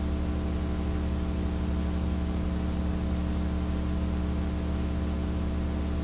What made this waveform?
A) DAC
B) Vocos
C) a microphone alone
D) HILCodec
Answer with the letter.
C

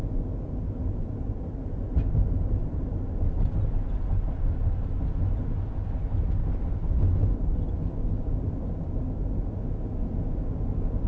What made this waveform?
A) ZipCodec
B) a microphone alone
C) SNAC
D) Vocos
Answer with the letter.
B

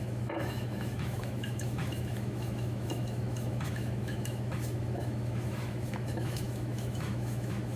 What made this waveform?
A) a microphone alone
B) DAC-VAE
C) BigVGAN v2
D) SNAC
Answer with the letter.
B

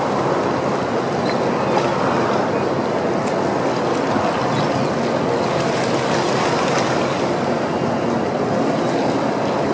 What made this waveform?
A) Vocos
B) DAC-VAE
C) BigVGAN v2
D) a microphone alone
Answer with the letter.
D